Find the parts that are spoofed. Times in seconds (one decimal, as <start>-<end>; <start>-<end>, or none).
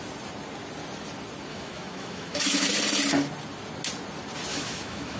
1.5-2.7; 4.5-5.2